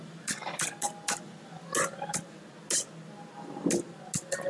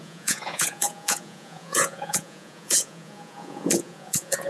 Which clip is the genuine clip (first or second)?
first